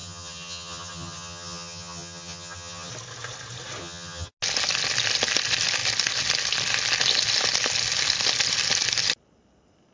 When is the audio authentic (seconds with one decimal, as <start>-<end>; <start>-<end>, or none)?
2.9-3.8; 4.3-9.9